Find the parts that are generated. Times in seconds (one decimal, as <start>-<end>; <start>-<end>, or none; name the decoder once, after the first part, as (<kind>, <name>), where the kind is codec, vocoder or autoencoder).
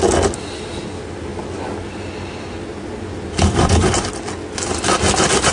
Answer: none